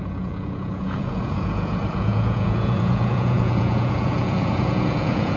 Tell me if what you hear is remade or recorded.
remade